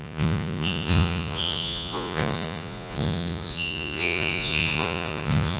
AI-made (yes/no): yes